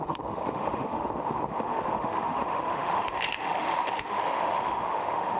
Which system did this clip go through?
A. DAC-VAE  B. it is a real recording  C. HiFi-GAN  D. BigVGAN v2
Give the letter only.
A